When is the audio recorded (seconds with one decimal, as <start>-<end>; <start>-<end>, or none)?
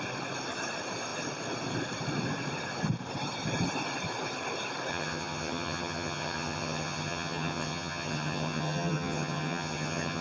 0.0-4.9